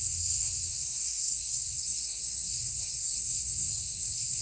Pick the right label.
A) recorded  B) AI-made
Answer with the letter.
B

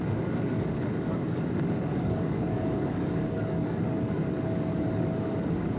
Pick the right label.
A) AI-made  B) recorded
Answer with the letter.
A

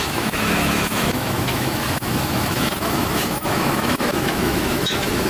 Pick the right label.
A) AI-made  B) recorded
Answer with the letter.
A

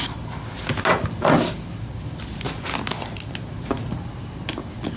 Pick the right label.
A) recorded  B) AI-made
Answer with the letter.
A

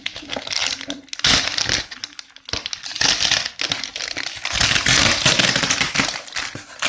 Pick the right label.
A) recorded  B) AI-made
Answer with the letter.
A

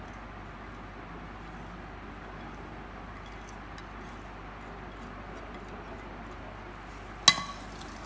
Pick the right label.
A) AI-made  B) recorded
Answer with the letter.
B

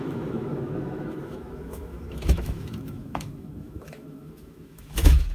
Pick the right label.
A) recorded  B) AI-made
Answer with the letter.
B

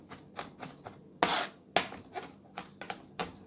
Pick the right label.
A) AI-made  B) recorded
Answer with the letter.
B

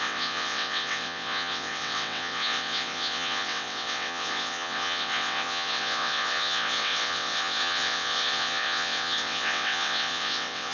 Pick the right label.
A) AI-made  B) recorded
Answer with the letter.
A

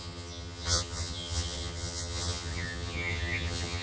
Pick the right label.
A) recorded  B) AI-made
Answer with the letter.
B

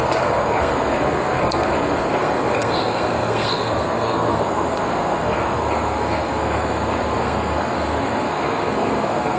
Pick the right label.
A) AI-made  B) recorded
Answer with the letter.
A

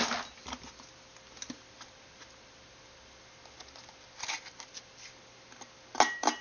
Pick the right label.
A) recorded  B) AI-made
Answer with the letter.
A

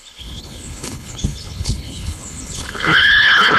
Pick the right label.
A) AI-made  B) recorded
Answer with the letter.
A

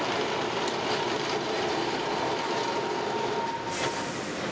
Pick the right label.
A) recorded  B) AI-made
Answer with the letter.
A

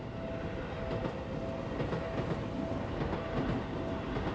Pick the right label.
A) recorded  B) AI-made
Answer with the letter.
A